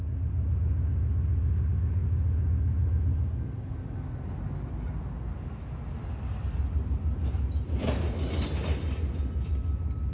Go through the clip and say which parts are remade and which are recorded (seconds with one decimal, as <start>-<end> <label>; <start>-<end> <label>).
0.0-10.1 recorded